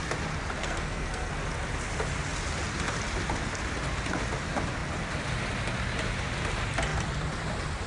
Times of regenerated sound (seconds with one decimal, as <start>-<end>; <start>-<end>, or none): 0.6-1.3